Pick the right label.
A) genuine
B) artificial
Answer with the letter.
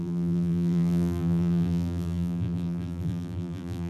B